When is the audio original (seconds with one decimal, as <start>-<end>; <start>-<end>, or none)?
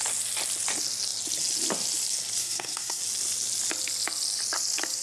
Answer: 0.0-2.4; 3.0-5.0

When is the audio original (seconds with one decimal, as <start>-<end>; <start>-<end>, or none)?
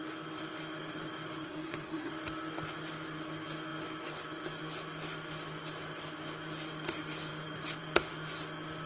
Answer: 0.0-1.4; 2.1-8.9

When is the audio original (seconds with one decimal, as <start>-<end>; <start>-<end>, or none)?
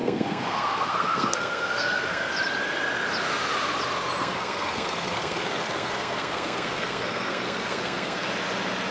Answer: 2.3-4.2; 8.3-8.9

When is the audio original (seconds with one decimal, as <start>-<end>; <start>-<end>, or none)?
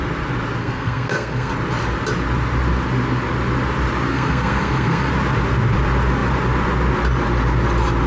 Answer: 0.0-0.6; 1.5-4.1; 5.1-8.1